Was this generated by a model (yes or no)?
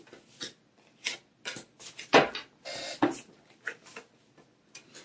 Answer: no